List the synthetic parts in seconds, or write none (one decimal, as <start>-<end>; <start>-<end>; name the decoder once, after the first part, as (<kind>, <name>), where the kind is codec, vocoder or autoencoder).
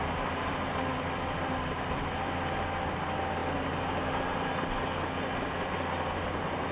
none